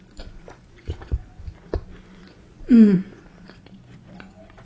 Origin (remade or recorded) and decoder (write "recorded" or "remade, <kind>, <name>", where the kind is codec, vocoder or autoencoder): remade, vocoder, Vocos